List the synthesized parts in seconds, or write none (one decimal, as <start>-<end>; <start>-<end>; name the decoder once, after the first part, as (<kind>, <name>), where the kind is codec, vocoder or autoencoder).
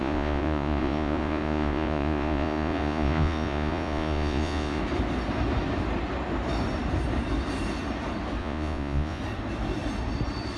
0.0-4.8 (vocoder, Vocos); 8.4-9.2